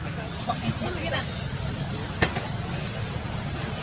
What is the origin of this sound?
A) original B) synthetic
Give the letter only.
A